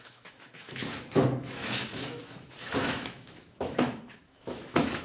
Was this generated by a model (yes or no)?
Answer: yes